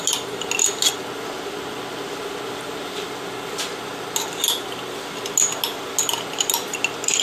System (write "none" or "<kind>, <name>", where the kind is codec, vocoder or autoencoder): none